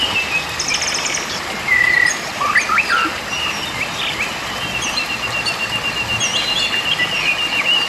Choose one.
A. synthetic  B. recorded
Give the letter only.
A